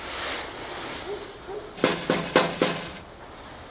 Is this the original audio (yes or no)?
yes